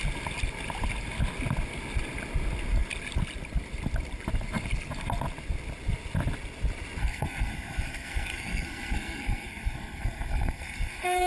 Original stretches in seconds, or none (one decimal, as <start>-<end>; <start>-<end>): 0.0-7.0